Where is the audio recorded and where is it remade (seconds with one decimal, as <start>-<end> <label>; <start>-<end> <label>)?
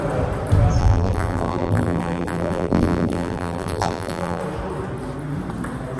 0.0-0.8 recorded; 0.8-4.4 remade; 4.4-6.0 recorded